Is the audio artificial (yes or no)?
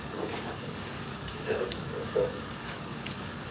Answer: yes